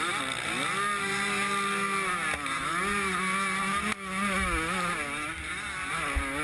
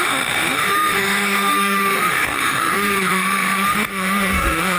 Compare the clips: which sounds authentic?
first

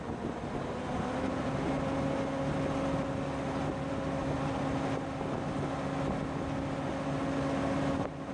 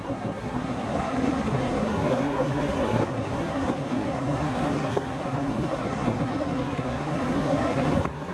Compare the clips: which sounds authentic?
first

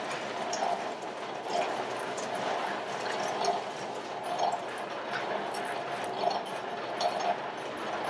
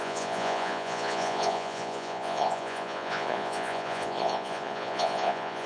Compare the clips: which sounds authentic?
first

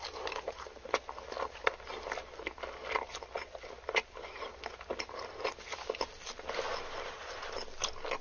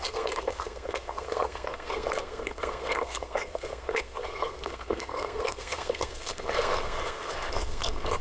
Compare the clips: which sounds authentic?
first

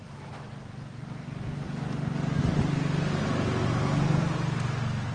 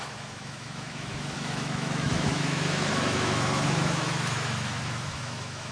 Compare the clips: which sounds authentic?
first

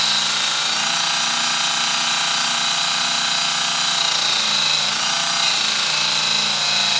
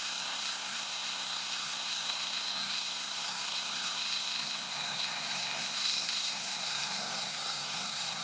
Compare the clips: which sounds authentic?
first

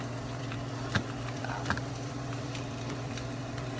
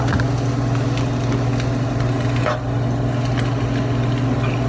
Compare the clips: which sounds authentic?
second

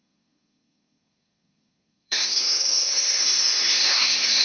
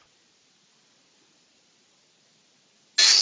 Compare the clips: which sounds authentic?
second